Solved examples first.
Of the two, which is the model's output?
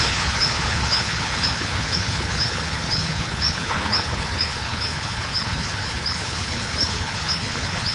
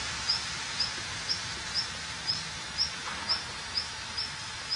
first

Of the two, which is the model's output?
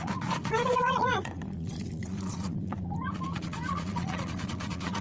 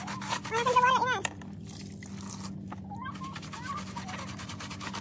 first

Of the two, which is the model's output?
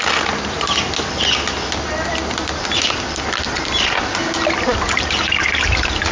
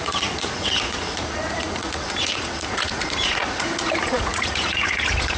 second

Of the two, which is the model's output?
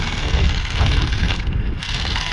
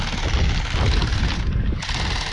first